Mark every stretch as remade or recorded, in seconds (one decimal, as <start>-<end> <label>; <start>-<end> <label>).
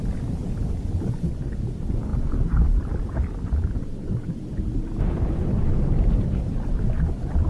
0.0-7.5 recorded